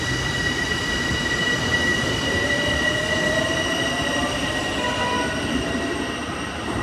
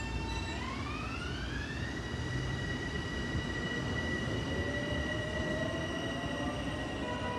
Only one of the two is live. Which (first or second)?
second